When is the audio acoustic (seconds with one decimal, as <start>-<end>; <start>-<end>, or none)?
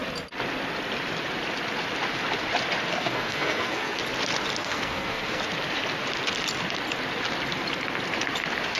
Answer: 0.0-2.9; 4.0-4.6; 5.4-8.8